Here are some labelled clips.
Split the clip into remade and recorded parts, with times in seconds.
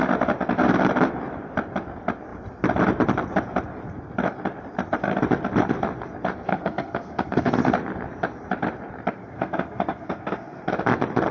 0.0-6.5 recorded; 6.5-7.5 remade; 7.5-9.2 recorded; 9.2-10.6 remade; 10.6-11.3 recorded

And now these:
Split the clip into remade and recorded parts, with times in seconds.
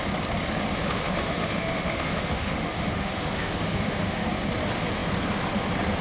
0.0-0.8 recorded; 0.8-4.3 remade; 4.3-6.0 recorded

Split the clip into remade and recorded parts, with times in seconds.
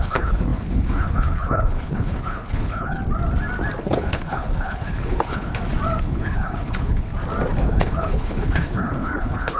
0.0-3.0 remade; 3.0-3.8 recorded; 3.8-5.5 remade; 5.5-6.0 recorded; 6.0-7.1 remade; 7.1-7.6 recorded; 7.6-9.6 remade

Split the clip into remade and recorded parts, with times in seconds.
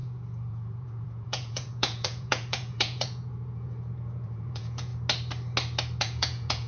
0.0-4.9 remade; 4.9-6.0 recorded; 6.0-6.7 remade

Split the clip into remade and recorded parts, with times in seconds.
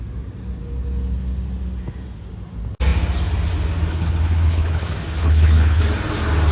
0.0-3.9 recorded; 3.9-5.8 remade; 5.8-6.5 recorded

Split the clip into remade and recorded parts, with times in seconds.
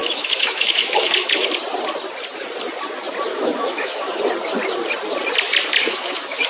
0.0-1.5 remade; 1.5-3.3 recorded; 3.3-4.1 remade; 4.1-5.8 recorded; 5.8-6.5 remade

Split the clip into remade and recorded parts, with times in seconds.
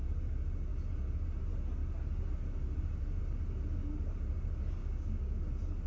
0.0-4.8 recorded; 4.8-5.4 remade; 5.4-5.9 recorded